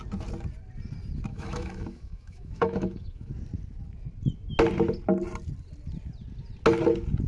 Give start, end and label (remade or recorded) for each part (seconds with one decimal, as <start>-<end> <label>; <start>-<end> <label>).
0.0-1.3 recorded; 1.3-3.3 remade; 3.3-7.3 recorded